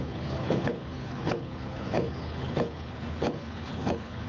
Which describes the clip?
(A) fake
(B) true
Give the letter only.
A